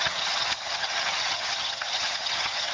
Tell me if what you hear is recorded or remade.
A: remade